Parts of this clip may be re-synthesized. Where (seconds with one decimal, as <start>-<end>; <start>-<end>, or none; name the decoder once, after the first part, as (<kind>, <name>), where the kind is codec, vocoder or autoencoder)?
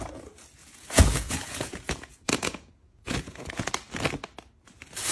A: 0.6-3.7 (vocoder, Vocos)